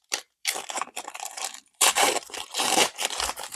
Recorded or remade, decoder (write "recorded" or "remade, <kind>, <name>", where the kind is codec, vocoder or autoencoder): remade, vocoder, BigVGAN v2